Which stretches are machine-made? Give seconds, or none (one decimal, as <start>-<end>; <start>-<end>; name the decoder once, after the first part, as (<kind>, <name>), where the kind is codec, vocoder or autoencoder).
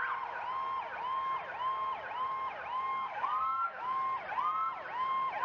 2.9-3.8 (codec, DAC)